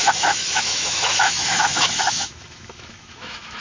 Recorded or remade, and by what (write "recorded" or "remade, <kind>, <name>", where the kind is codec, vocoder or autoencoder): remade, autoencoder, DAC-VAE